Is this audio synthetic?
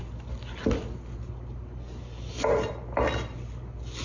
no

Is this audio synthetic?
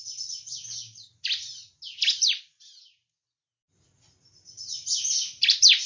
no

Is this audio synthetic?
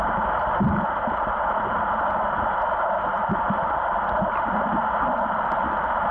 no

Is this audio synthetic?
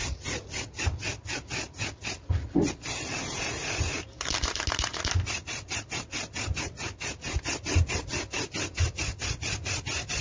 no